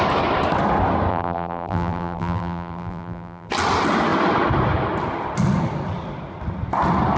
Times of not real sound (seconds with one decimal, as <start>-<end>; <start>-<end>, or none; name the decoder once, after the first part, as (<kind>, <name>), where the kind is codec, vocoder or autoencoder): 1.1-3.5 (vocoder, BigVGAN v2)